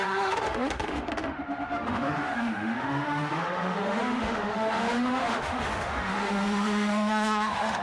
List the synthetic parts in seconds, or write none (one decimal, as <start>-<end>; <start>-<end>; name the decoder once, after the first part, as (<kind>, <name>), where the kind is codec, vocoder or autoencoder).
0.0-7.8 (autoencoder, DAC-VAE)